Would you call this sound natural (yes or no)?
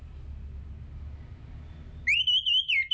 yes